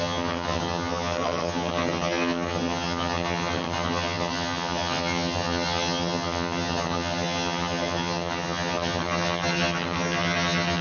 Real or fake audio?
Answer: fake